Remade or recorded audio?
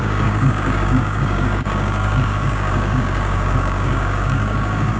remade